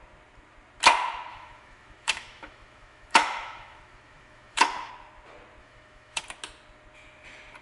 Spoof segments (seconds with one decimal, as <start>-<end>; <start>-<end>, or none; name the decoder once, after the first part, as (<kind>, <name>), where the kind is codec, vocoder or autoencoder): 1.3-4.9 (autoencoder, DAC-VAE); 5.6-6.2